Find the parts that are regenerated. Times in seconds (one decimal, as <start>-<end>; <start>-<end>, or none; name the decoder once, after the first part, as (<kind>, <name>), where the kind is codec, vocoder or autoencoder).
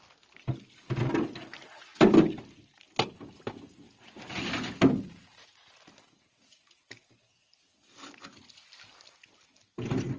none